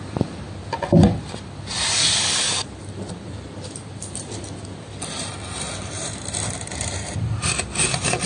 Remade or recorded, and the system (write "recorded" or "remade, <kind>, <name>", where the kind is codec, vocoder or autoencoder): remade, vocoder, BigVGAN v2